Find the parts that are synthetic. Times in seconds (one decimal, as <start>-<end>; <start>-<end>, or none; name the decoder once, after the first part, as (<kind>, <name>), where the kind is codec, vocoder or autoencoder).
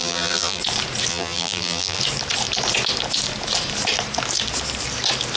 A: 0.0-0.6 (vocoder, BigVGAN v2); 1.1-2.0